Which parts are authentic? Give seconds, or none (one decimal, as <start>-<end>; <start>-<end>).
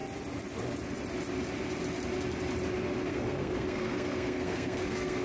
0.0-3.1